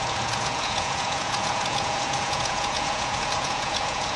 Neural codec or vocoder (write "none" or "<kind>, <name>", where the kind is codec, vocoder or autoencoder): vocoder, Vocos